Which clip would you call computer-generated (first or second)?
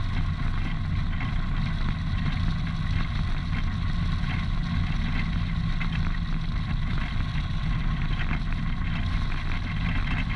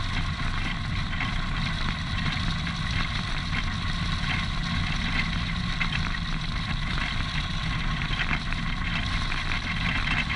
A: second